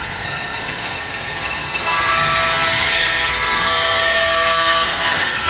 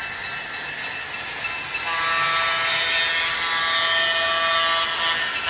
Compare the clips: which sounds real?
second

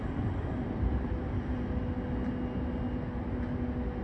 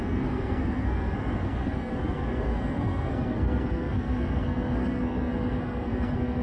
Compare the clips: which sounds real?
first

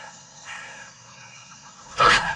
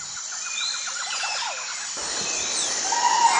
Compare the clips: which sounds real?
second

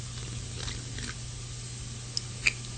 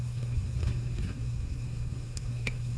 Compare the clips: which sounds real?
first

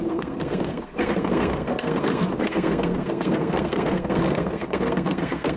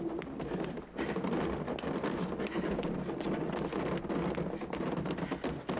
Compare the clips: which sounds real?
second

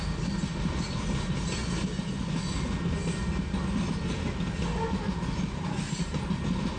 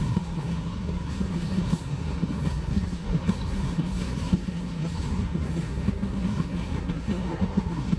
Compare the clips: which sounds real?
first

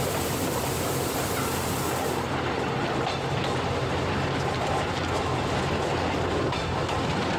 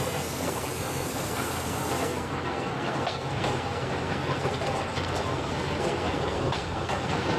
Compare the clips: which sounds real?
first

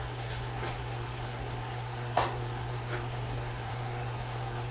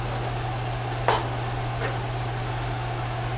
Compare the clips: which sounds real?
second